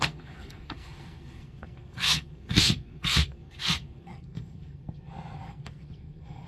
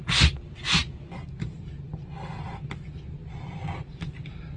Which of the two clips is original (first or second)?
second